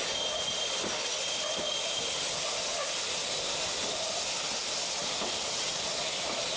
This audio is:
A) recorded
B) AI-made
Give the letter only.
A